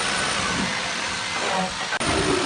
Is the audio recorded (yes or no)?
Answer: yes